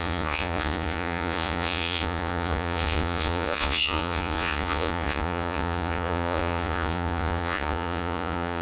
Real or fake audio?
fake